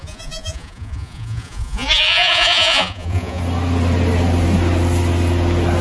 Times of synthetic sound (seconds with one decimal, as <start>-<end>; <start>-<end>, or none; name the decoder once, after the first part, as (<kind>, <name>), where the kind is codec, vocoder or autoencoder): 0.0-3.4 (vocoder, Vocos)